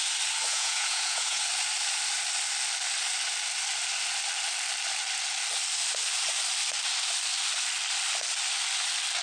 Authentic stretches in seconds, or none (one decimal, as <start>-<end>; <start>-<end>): 0.0-0.5; 1.4-9.2

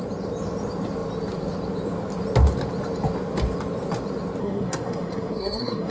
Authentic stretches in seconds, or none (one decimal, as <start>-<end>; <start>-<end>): 0.0-4.4